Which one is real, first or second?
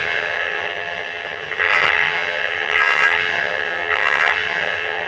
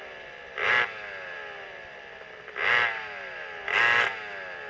second